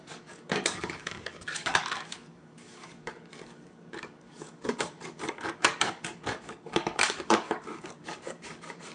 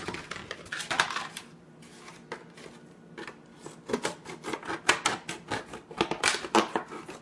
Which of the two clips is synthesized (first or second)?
first